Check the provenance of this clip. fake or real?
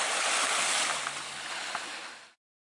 real